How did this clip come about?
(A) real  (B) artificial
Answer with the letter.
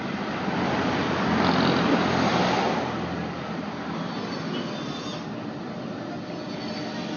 A